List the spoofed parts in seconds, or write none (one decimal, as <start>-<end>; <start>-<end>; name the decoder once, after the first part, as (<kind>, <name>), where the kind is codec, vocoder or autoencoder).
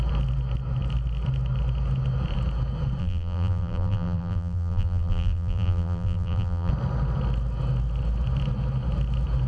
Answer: 3.0-6.7 (vocoder, BigVGAN v2)